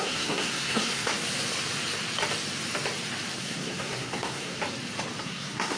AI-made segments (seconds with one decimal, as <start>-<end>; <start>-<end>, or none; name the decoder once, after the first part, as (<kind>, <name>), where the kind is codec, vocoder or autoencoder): 0.0-1.1 (codec, SNAC); 3.4-4.6; 5.2-5.8